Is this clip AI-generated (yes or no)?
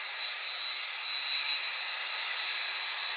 no